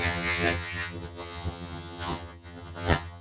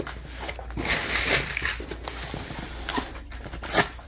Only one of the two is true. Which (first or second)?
second